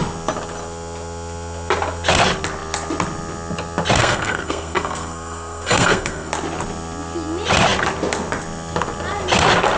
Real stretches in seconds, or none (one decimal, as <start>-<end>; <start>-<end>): 0.0-4.0; 6.3-9.8